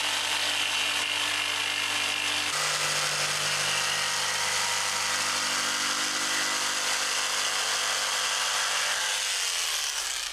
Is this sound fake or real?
real